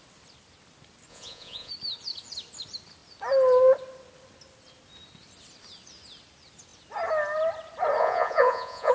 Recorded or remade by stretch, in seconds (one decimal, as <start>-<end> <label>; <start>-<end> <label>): 0.0-1.1 recorded; 1.1-1.7 remade; 1.7-8.0 recorded; 8.0-8.9 remade